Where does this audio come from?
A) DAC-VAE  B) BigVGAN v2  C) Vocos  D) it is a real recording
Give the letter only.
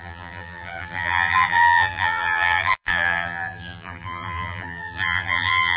B